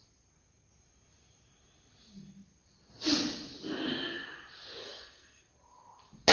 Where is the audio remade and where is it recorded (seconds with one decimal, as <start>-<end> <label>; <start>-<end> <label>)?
0.0-4.8 recorded; 4.8-5.4 remade; 5.4-6.3 recorded